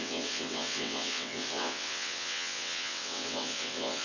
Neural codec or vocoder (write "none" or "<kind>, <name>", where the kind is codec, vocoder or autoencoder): vocoder, WaveNeXt